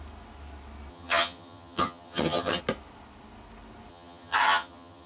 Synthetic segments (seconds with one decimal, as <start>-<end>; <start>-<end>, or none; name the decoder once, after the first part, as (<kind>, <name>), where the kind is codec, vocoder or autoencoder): 0.9-2.6 (vocoder, HiFi-GAN); 3.9-5.1